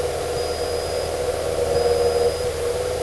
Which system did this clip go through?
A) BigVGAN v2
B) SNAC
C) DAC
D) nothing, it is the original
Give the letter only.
D